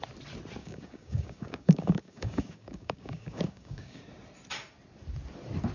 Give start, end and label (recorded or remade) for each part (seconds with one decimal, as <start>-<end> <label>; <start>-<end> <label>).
0.0-0.6 recorded; 0.6-4.0 remade; 4.0-5.7 recorded